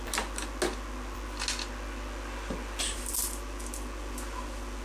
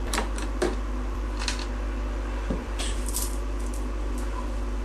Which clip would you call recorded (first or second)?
first